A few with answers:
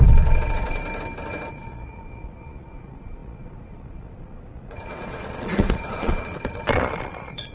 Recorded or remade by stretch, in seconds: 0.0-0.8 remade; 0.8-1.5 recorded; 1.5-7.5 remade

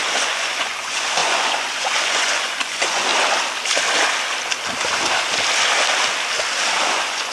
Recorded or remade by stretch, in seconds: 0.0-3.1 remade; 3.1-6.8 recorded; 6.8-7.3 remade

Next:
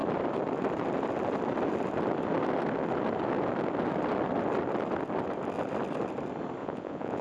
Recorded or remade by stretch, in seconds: 0.0-6.6 recorded; 6.6-7.2 remade